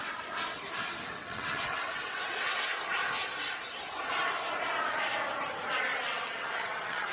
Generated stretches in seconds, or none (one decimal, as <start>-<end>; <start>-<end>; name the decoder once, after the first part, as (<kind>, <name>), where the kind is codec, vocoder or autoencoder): 1.1-2.7 (vocoder, WaveNeXt); 5.9-7.1